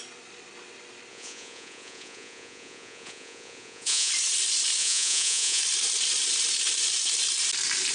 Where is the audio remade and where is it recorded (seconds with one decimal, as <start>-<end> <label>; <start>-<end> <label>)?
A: 0.0-1.1 recorded; 1.1-4.1 remade; 4.1-4.8 recorded; 4.8-5.6 remade; 5.6-7.9 recorded